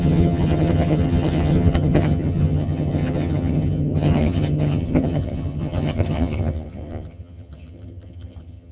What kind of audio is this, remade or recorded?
remade